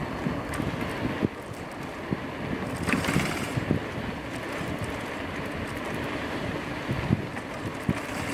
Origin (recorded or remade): recorded